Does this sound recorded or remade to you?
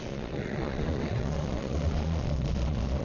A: remade